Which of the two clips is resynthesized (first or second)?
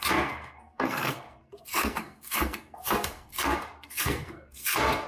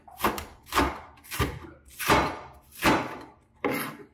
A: first